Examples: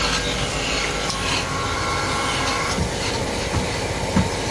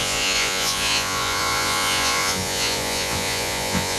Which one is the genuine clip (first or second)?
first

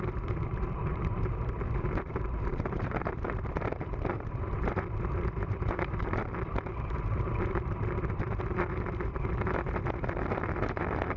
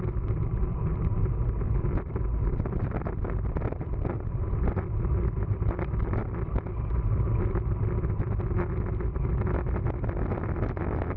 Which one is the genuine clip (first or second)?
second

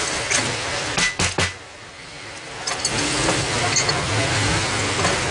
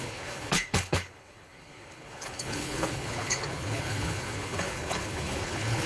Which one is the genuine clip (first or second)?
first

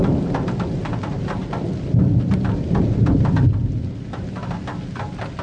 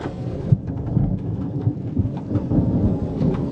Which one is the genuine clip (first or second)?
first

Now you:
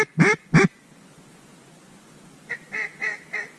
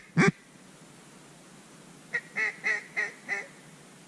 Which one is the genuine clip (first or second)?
second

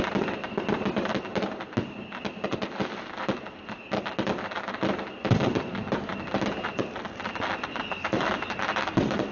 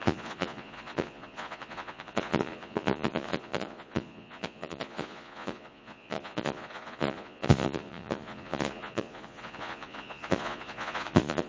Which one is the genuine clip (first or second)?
first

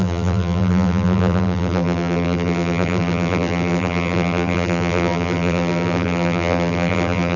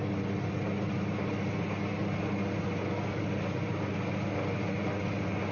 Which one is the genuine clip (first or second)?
second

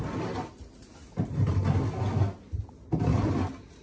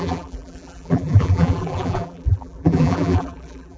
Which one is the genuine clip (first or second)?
first